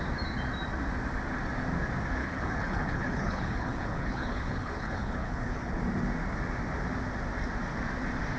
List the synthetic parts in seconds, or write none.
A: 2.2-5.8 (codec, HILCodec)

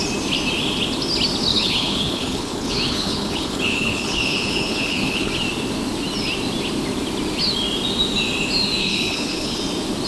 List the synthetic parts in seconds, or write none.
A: 1.5-5.3 (codec, HILCodec); 8.8-9.6

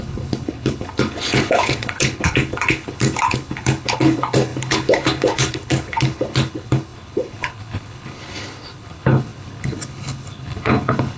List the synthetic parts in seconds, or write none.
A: 0.0-11.2 (codec, HILCodec)

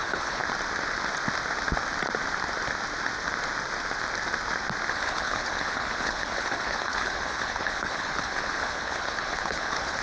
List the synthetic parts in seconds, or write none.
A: 0.0-0.4 (codec, HILCodec); 4.9-10.0

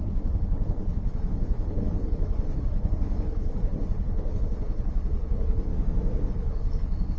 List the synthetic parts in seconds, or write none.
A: 0.0-5.7 (codec, HILCodec); 6.3-7.2